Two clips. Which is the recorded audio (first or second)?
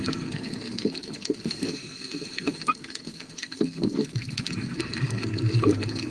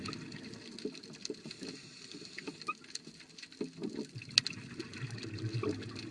second